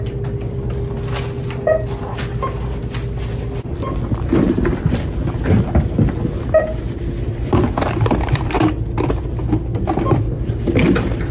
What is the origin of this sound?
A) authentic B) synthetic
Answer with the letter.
A